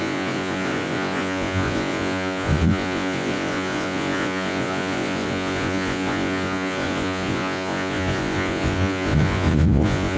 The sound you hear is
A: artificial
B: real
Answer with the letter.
A